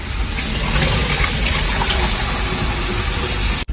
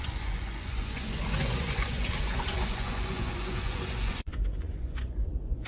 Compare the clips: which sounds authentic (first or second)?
first